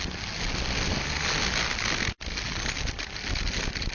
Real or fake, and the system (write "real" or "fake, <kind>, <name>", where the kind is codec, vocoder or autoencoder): real